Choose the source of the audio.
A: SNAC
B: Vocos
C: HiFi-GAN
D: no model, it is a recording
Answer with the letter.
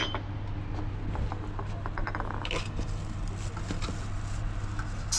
D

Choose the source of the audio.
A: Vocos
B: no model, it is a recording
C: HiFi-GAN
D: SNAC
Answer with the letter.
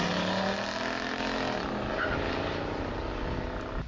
B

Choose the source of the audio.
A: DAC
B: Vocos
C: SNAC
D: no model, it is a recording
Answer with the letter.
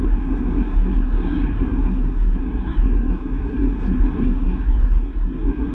C